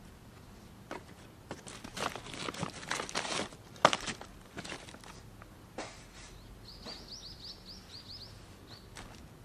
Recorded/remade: recorded